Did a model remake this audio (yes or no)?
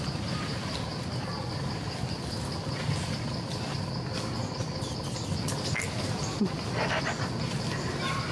no